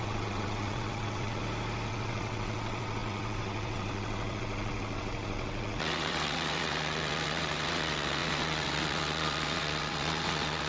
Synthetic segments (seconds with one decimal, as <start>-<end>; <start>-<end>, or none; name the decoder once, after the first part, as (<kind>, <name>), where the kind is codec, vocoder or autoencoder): 0.0-1.4 (vocoder, WaveNeXt); 1.9-10.7